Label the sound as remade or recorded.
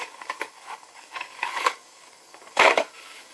remade